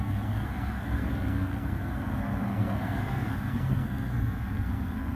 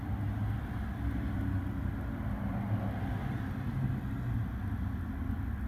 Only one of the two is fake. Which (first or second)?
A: first